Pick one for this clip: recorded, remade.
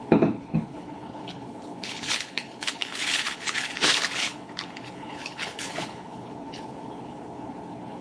remade